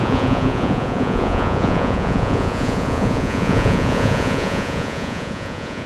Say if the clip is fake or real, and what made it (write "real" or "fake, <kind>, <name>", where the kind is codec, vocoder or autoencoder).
fake, vocoder, Vocos